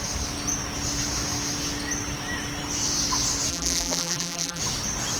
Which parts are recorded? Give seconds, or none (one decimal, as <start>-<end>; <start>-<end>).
0.0-3.5; 4.6-5.2